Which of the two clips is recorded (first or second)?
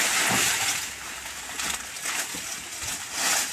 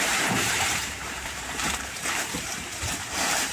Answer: first